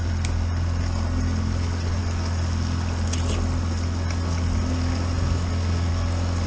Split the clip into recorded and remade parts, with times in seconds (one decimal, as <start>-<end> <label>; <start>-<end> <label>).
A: 0.0-6.5 recorded